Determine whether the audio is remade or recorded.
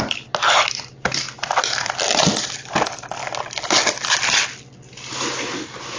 recorded